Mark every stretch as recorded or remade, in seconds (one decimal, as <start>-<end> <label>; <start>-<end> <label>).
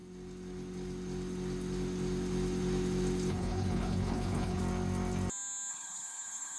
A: 0.0-3.3 recorded; 3.3-4.6 remade; 4.6-5.7 recorded; 5.7-6.6 remade